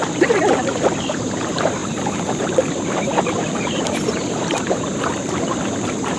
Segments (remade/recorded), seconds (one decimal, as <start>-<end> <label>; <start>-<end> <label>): 0.0-0.7 remade; 0.7-1.8 recorded; 1.8-5.5 remade; 5.5-6.2 recorded